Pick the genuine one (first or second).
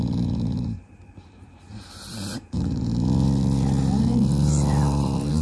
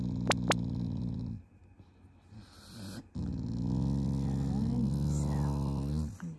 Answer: second